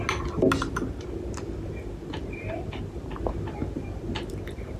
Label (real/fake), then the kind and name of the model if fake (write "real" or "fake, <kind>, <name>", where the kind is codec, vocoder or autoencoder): real